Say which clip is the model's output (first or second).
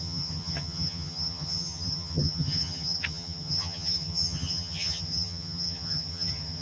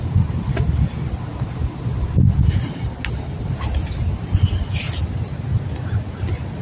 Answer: first